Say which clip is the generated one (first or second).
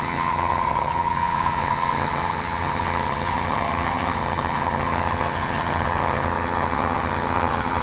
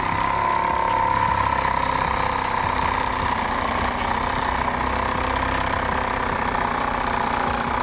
first